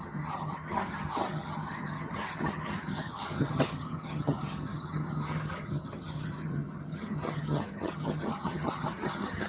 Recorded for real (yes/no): no